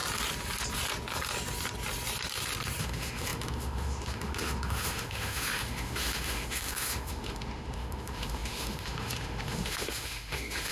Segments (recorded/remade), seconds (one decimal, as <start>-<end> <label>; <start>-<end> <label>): 0.0-2.8 recorded; 2.8-10.7 remade